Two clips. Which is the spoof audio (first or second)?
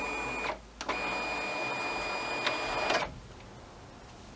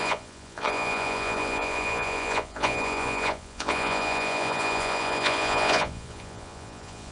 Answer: second